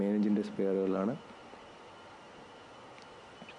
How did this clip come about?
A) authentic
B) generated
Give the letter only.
A